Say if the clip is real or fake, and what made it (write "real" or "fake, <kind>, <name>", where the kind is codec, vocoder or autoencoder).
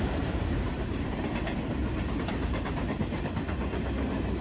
fake, vocoder, BigVGAN v2